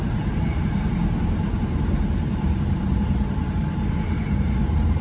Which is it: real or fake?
fake